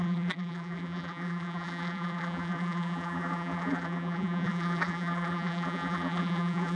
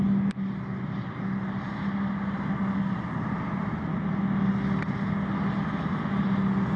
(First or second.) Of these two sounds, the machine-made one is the first